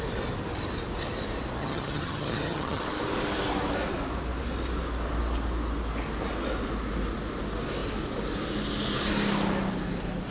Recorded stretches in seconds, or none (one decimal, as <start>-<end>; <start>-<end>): 0.0-1.6; 2.8-10.3